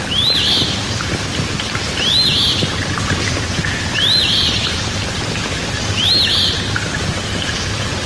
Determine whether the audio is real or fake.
real